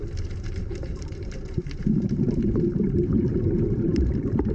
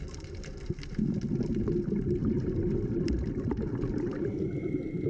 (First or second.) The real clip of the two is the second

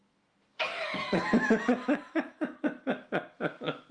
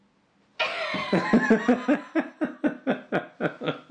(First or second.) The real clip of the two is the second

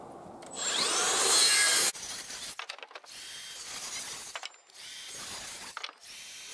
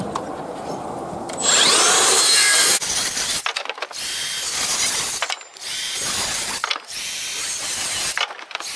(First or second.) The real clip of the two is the first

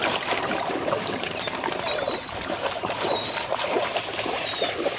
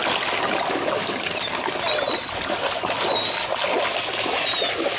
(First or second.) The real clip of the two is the second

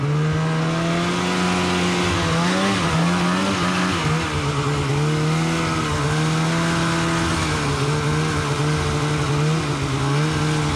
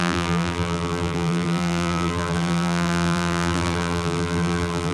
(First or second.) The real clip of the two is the first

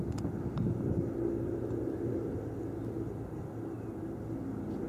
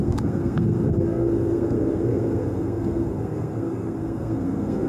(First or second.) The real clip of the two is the first